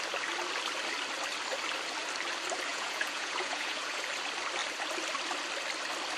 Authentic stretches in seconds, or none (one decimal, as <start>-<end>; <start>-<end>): 0.0-2.7; 4.1-6.2